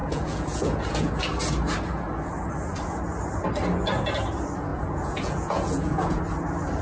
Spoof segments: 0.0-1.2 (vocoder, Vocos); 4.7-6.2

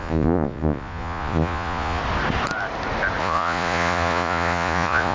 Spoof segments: 0.0-2.0 (vocoder, Vocos); 3.2-5.1

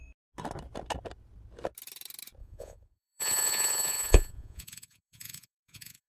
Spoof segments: 2.4-6.1 (vocoder, Vocos)